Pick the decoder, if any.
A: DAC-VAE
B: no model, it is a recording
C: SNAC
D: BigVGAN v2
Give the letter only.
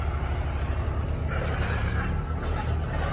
B